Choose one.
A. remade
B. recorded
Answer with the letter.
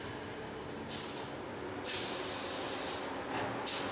B